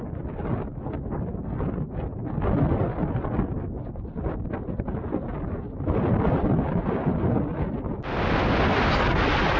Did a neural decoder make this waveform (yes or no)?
no